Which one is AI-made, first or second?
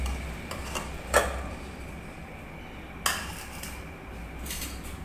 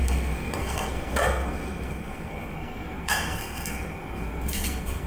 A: second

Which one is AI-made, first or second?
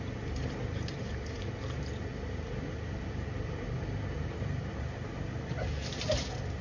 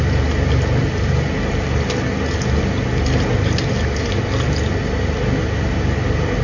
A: first